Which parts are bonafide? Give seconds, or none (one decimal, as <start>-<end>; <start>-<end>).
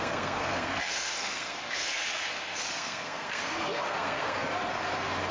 4.4-5.3